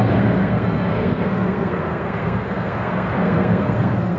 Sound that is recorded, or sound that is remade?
remade